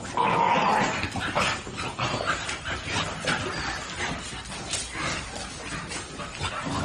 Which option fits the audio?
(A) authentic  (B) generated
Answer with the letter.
A